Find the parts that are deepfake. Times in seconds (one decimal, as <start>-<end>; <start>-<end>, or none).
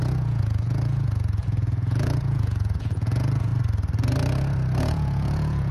0.0-3.5; 4.8-5.7